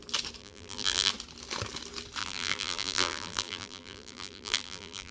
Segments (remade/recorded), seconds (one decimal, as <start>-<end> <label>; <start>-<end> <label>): 0.0-0.4 recorded; 0.4-1.1 remade; 1.1-2.2 recorded; 2.2-5.1 remade